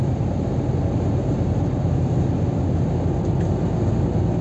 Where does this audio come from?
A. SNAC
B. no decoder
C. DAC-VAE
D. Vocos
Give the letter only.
B